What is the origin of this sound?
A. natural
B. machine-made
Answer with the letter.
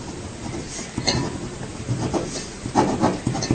A